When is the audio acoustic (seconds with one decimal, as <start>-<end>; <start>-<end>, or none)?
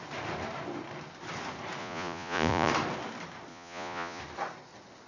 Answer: 0.0-1.8; 2.7-3.5; 4.2-5.1